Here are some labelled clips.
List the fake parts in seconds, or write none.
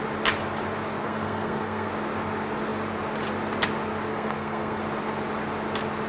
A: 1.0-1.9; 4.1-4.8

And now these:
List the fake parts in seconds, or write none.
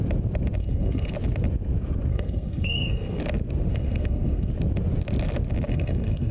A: 0.6-1.1; 2.1-3.2; 3.7-4.5; 5.7-6.3